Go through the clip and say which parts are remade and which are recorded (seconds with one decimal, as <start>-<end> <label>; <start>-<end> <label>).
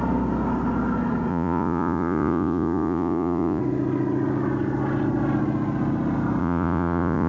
0.0-1.3 recorded; 1.3-3.6 remade; 3.6-6.4 recorded; 6.4-7.3 remade